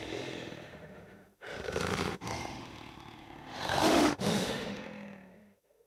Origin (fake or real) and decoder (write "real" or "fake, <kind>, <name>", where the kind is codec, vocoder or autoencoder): fake, autoencoder, DAC-VAE